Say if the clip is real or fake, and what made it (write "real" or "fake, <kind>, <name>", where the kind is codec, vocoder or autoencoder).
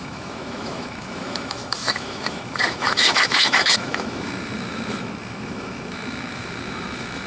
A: fake, autoencoder, DAC-VAE